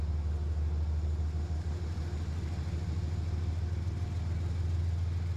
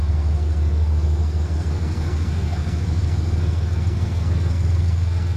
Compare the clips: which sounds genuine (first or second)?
first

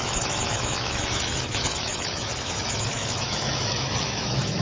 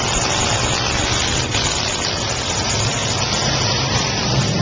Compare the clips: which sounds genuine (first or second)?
second